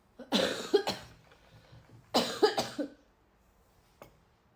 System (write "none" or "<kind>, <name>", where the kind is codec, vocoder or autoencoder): none